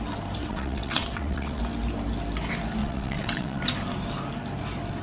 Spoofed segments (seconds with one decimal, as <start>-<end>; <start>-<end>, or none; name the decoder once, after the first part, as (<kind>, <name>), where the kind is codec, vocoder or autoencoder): 0.4-1.6 (vocoder, WaveNeXt); 2.8-3.6

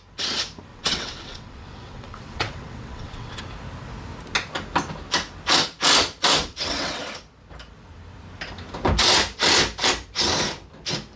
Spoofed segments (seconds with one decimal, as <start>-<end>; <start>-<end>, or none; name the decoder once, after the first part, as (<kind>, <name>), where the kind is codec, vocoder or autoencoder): 0.7-3.4 (vocoder, WaveNeXt); 6.4-7.0

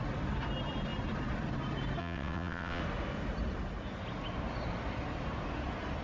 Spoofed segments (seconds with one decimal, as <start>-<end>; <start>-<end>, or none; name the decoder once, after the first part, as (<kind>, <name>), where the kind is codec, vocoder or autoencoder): 2.0-2.8 (vocoder, WaveNeXt)

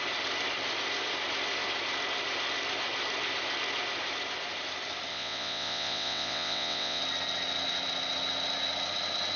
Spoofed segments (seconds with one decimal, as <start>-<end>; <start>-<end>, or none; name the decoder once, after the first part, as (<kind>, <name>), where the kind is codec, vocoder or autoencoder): 5.1-7.0 (vocoder, WaveNeXt)

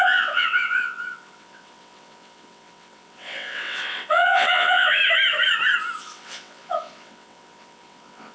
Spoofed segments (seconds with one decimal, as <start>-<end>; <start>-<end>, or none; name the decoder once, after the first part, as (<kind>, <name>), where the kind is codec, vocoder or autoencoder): 0.0-5.0 (vocoder, WaveNeXt); 6.0-8.3

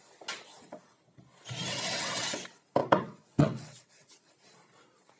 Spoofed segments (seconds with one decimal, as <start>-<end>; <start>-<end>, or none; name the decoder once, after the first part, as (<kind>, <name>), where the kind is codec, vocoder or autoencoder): 1.7-2.4 (vocoder, WaveNeXt); 2.8-4.3